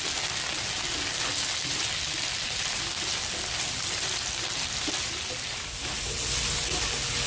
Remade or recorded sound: recorded